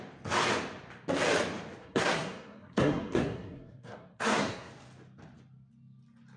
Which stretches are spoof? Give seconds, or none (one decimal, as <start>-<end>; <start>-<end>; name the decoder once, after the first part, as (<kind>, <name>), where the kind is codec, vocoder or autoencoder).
1.8-4.7 (codec, SNAC)